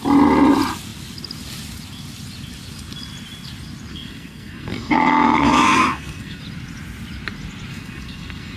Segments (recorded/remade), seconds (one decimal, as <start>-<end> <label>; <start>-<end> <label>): 0.0-3.9 recorded; 3.9-6.4 remade; 6.4-7.7 recorded; 7.7-8.6 remade